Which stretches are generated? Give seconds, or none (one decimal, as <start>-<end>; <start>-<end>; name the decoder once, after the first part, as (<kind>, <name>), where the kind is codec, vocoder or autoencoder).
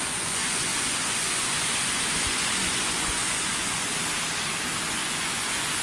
0.0-3.9 (vocoder, Vocos); 4.8-5.8